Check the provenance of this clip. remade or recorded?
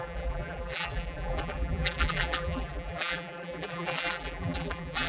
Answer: remade